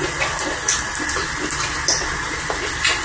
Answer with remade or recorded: recorded